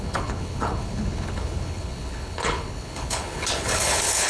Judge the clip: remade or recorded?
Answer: remade